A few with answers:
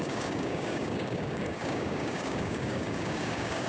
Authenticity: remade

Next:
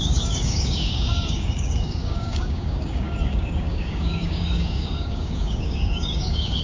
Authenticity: remade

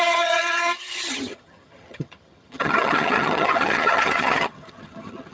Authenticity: remade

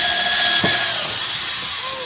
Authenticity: recorded